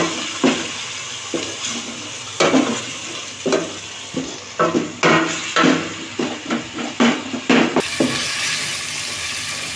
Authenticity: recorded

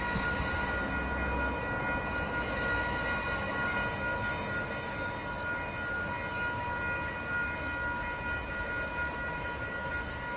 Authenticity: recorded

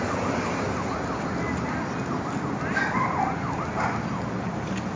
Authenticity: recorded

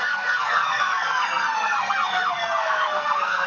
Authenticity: remade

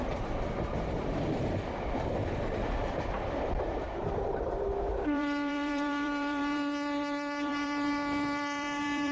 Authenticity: remade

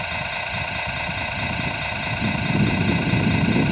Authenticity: recorded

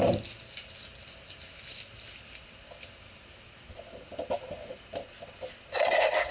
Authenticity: recorded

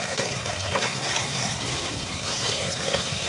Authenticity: remade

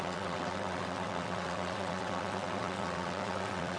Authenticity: remade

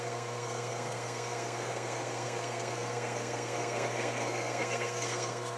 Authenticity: remade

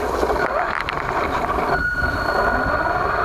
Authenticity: recorded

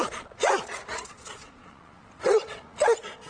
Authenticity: remade